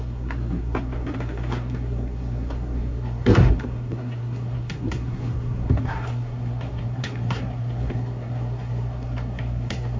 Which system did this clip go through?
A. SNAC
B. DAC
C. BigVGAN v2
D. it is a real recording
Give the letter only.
A